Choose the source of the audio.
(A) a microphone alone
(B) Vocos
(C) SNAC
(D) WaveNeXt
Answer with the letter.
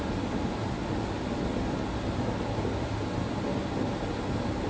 A